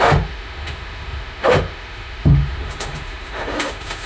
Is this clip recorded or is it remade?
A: remade